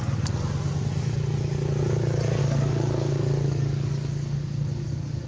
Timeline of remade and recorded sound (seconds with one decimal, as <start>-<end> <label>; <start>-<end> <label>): 0.0-2.4 recorded; 2.4-5.3 remade